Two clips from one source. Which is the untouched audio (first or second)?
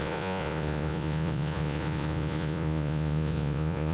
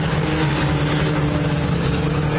second